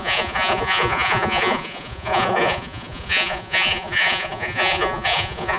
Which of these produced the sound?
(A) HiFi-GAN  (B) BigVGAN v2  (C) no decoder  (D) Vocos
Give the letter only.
D